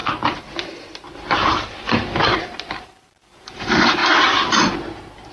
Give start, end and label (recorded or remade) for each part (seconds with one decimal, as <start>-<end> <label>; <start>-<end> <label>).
0.0-5.3 remade